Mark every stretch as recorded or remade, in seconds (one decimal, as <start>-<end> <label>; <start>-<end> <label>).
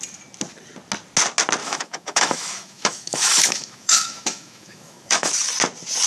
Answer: 0.0-1.6 recorded; 1.6-5.3 remade; 5.3-6.1 recorded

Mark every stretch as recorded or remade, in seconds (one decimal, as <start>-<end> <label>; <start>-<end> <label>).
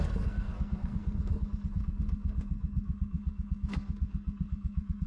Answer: 0.0-5.1 remade